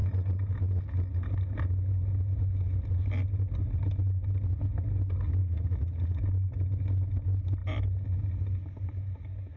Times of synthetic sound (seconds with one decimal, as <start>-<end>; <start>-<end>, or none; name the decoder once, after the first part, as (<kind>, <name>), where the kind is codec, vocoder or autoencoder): 5.4-6.2 (vocoder, Vocos)